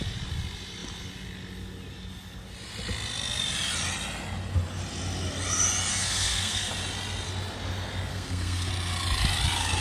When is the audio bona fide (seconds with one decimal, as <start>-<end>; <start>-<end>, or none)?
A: 0.0-5.9; 6.7-8.1; 8.7-9.8